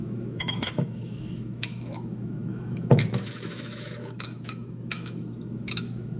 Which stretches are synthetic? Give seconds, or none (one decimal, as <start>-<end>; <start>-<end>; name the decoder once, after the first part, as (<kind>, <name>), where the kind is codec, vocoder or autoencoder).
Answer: 0.0-6.2 (autoencoder, DAC-VAE)